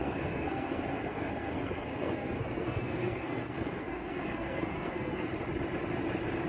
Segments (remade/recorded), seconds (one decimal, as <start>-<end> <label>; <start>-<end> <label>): 0.0-5.3 remade; 5.3-6.5 recorded